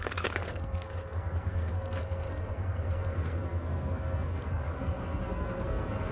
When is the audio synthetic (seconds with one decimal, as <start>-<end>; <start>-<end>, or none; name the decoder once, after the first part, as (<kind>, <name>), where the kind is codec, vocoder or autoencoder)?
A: 0.0-6.1 (codec, SNAC)